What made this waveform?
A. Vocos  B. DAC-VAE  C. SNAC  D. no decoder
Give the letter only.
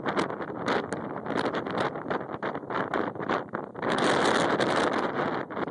D